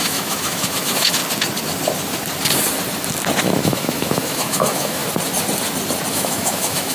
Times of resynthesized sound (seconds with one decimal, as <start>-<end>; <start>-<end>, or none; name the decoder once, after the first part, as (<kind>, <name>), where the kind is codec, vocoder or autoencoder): 0.0-1.2 (autoencoder, DAC-VAE); 3.4-5.0; 6.1-6.9